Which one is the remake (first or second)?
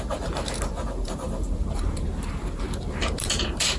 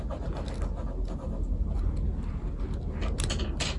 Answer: first